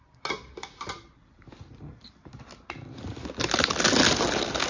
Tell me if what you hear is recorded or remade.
recorded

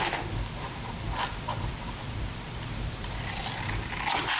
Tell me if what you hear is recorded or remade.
remade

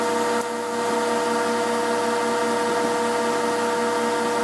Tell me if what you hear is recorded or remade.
recorded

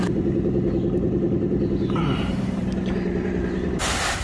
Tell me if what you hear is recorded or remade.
remade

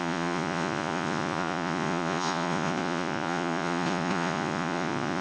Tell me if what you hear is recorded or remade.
remade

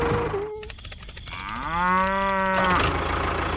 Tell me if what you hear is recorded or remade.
recorded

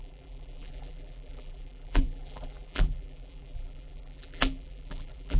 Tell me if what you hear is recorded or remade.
remade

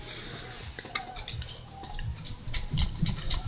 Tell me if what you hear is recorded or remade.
recorded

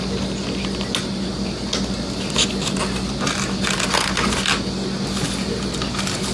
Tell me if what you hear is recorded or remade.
recorded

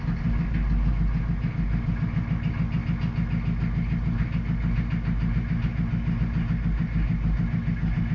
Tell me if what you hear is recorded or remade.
recorded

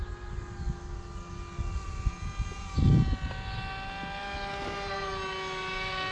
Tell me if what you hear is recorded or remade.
recorded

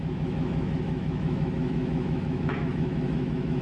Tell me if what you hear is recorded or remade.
remade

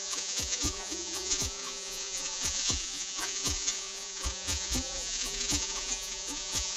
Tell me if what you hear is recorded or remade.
remade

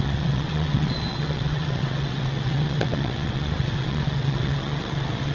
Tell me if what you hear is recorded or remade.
remade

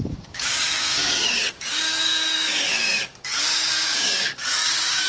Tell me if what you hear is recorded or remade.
remade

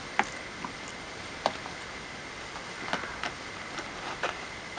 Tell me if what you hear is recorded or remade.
recorded